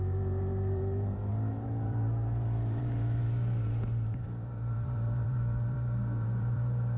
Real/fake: fake